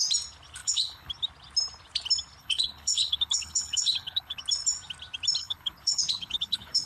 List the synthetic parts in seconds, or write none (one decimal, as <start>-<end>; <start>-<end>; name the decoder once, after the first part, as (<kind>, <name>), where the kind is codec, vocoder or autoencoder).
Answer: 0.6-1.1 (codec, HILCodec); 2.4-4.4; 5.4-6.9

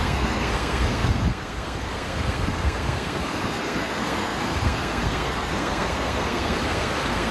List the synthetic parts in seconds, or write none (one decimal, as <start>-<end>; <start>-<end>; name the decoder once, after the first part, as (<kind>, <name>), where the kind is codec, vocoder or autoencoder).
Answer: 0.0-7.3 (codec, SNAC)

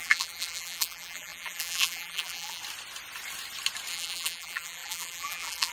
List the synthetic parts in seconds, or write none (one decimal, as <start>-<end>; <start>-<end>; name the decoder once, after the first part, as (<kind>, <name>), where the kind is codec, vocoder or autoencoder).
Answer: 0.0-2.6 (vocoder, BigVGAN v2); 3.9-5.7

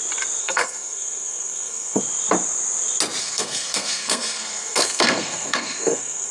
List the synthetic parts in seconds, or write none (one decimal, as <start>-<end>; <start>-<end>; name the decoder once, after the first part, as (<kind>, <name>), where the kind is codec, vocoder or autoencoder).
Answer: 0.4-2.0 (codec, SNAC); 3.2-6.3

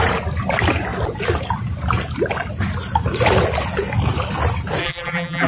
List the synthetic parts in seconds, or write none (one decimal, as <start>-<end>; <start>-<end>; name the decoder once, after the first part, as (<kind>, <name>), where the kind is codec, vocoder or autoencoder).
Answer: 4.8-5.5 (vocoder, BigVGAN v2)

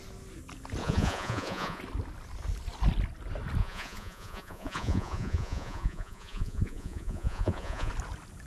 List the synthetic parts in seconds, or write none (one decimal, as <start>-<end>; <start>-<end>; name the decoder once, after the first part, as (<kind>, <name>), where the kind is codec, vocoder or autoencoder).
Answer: 0.8-1.8 (vocoder, Vocos); 3.6-7.9

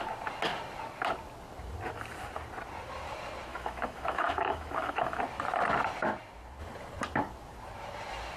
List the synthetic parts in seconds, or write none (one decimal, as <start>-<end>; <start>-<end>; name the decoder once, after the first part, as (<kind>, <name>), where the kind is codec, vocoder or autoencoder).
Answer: 3.5-5.2 (autoencoder, DAC-VAE)